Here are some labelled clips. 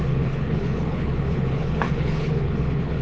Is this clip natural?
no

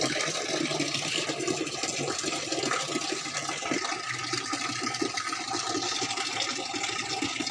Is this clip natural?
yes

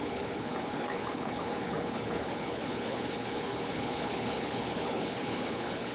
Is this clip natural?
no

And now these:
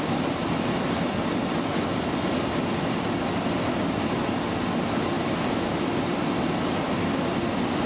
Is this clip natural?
yes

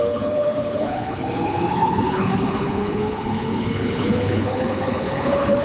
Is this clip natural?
no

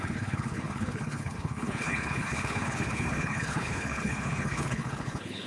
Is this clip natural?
no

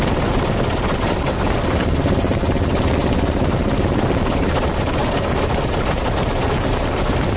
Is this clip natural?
yes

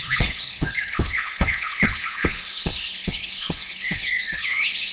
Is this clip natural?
no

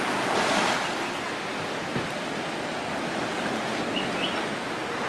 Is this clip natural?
yes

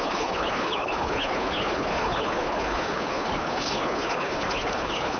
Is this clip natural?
no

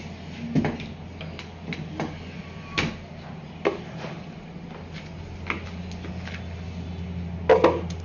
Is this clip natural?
yes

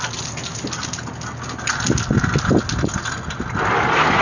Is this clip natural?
yes